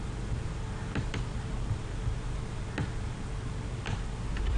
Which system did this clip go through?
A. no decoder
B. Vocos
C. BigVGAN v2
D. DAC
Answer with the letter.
A